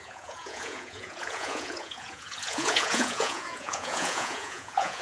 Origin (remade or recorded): remade